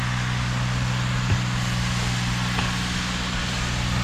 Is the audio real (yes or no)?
yes